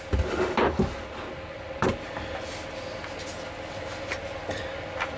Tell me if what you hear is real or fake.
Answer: real